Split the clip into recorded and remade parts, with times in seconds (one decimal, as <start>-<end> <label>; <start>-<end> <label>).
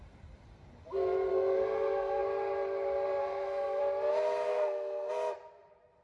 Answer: 0.0-1.3 recorded; 1.3-2.2 remade; 2.2-3.2 recorded; 3.2-3.8 remade; 3.8-4.5 recorded; 4.5-5.1 remade; 5.1-6.0 recorded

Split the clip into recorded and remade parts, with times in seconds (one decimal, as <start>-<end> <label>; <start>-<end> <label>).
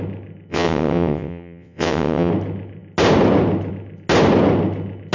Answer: 0.0-0.5 recorded; 0.5-2.3 remade; 2.3-5.1 recorded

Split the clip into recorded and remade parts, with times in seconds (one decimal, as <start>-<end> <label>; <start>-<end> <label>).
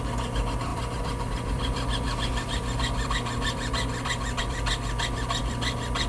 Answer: 0.0-6.1 recorded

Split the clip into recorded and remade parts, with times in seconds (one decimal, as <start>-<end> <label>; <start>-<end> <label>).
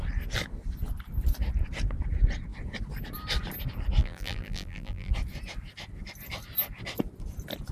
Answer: 0.0-4.0 recorded; 4.0-5.1 remade; 5.1-7.7 recorded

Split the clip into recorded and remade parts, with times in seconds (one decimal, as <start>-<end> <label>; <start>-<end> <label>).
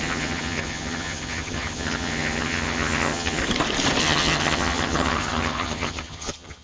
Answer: 0.0-3.4 remade; 3.4-4.0 recorded; 4.0-6.6 remade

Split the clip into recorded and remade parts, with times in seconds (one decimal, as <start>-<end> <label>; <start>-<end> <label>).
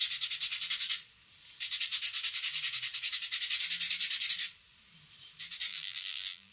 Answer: 0.0-5.7 recorded; 5.7-6.5 remade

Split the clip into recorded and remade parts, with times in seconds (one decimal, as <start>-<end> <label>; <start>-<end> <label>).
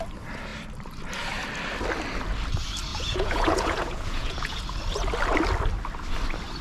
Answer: 0.0-2.9 recorded; 2.9-4.6 remade; 4.6-6.6 recorded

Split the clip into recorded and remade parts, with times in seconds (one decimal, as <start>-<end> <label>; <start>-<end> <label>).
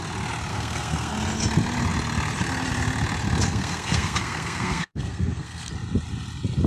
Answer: 0.0-0.5 recorded; 0.5-1.1 remade; 1.1-3.4 recorded; 3.4-5.7 remade; 5.7-6.7 recorded